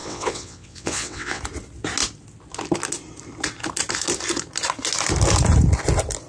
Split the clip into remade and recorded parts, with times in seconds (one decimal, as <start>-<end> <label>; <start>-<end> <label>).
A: 0.0-1.4 remade; 1.4-6.3 recorded